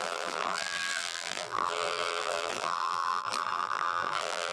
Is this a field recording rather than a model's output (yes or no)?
no